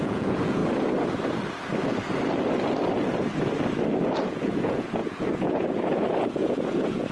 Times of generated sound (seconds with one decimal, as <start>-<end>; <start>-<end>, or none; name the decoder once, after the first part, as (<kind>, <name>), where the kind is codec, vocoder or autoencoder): 0.0-0.6 (vocoder, Vocos); 4.3-7.1